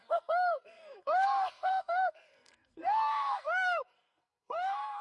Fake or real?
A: fake